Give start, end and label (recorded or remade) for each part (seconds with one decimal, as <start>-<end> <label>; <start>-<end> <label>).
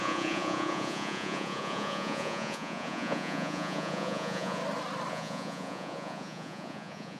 0.0-4.6 remade; 4.6-5.1 recorded; 5.1-7.2 remade